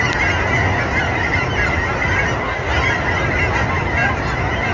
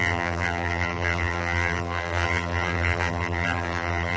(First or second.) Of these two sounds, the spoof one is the second